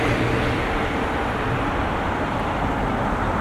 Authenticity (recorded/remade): remade